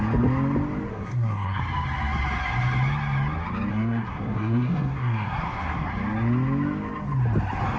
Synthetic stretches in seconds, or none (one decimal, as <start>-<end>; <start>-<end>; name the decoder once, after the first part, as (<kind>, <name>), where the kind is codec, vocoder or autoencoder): 0.9-1.6 (codec, SNAC); 3.7-5.9